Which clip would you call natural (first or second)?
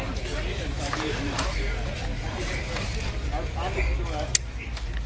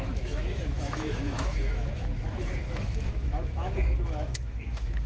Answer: first